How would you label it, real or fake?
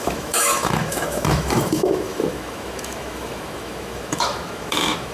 fake